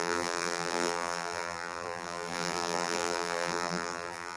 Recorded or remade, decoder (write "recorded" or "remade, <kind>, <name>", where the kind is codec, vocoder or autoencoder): remade, vocoder, BigVGAN v2